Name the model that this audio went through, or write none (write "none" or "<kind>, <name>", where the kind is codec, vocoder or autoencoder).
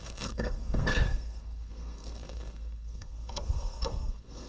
codec, SNAC